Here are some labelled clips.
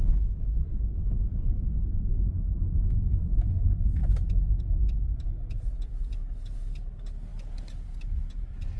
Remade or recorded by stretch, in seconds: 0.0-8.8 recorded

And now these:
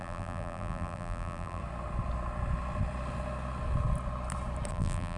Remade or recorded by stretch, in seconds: 0.0-1.6 remade; 1.6-4.7 recorded; 4.7-5.2 remade

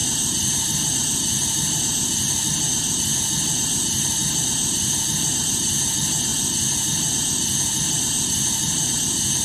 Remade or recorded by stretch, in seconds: 0.0-6.3 remade; 6.3-8.3 recorded; 8.3-9.4 remade

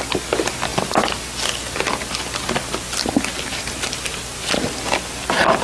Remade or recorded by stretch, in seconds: 0.0-5.6 recorded

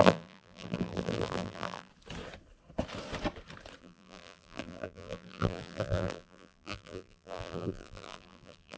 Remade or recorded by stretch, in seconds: 0.0-1.9 remade; 1.9-3.8 recorded; 3.8-8.8 remade

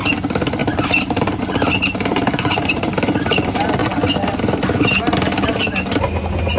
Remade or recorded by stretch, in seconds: 0.0-0.6 recorded; 0.6-1.4 remade; 1.4-2.1 recorded; 2.1-3.0 remade; 3.0-6.6 recorded